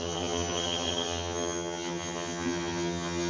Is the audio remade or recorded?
remade